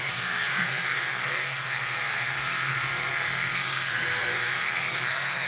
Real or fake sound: fake